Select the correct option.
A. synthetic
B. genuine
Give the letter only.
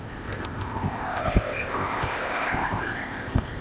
A